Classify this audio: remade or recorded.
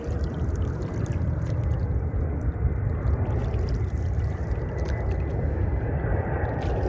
remade